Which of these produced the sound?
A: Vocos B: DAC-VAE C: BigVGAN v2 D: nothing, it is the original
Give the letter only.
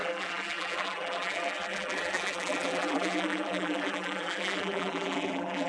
C